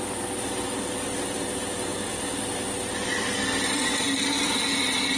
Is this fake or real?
real